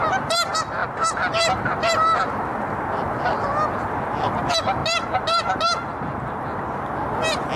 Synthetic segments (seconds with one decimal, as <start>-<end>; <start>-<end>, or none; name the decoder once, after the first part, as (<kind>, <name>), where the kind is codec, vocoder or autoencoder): none